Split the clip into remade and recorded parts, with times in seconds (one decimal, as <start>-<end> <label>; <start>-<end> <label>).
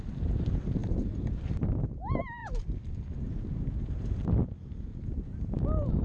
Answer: 0.0-0.8 recorded; 0.8-2.0 remade; 2.0-2.4 recorded; 2.4-3.9 remade; 3.9-4.9 recorded; 4.9-6.0 remade